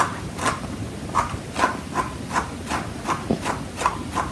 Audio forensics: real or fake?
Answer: real